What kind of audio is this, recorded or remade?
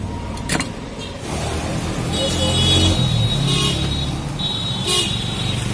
recorded